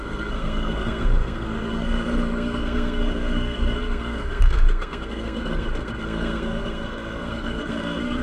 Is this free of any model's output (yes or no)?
no